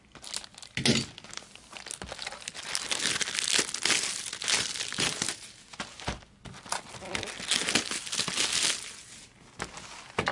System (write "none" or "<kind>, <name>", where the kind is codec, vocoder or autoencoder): none